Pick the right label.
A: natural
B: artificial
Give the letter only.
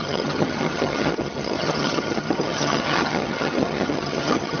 B